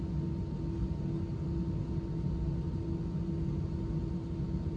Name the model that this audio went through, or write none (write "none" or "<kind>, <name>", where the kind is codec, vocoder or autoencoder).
none